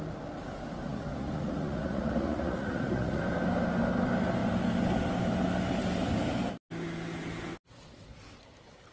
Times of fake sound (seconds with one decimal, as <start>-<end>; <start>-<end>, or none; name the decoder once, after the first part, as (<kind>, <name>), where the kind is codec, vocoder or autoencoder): 0.9-3.2 (vocoder, Vocos)